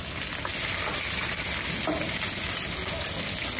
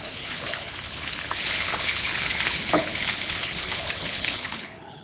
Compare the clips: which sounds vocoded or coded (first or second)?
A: second